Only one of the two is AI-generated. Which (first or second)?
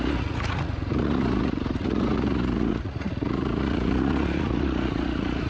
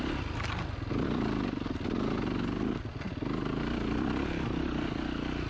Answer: first